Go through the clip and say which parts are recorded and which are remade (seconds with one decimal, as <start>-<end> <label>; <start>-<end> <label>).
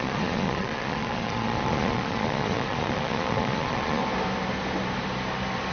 0.0-4.0 remade; 4.0-5.7 recorded